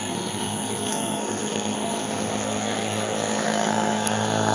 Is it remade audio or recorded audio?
remade